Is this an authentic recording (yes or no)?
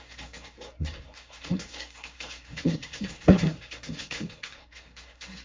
no